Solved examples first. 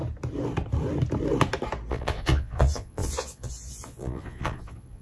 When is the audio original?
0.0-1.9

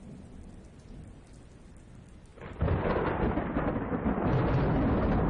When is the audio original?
0.0-5.3

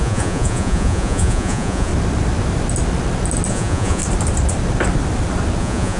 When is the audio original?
1.9-3.5; 4.0-5.6

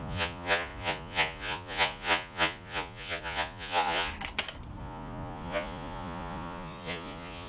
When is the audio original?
4.1-4.8

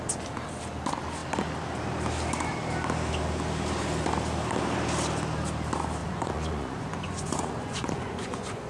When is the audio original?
0.0-6.0

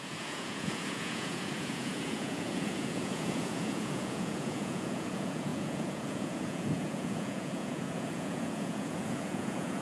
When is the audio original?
none

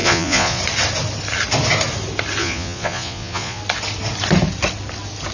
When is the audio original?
0.6-2.4; 3.6-5.3

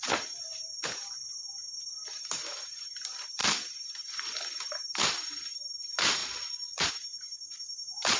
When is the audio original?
0.0-6.2; 6.9-8.2